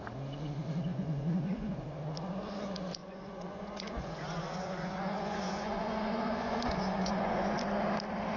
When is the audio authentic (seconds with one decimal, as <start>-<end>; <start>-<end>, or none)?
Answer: 0.0-0.9; 1.7-3.0; 7.6-8.4

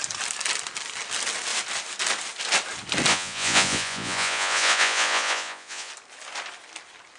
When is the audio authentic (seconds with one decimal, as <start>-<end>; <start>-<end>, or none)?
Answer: 0.0-3.1; 5.9-7.2

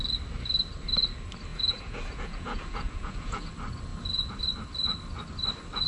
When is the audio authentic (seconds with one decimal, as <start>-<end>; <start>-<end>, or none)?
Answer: 0.0-1.5; 3.5-5.9

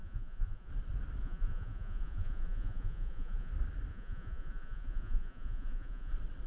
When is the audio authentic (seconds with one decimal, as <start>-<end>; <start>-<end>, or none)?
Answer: 0.7-1.2; 3.5-3.9; 6.1-6.5